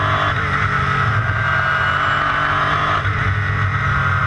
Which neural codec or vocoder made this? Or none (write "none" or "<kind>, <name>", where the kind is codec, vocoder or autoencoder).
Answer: none